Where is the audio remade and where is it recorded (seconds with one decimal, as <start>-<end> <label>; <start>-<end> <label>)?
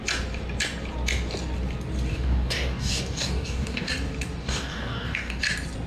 0.0-2.1 recorded; 2.1-3.9 remade; 3.9-4.4 recorded; 4.4-5.4 remade; 5.4-5.9 recorded